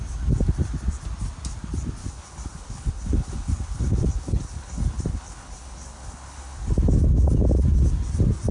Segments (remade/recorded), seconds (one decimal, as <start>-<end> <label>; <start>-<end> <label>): 0.0-2.0 recorded; 2.0-6.7 remade; 6.7-8.5 recorded